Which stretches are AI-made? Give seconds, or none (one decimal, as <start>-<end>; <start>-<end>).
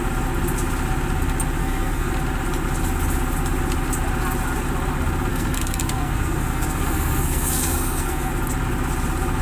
1.6-2.1; 5.3-8.3